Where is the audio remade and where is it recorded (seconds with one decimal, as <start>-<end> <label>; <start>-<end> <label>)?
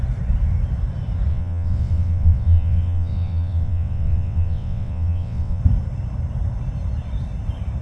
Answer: 0.0-1.3 recorded; 1.3-5.6 remade; 5.6-7.8 recorded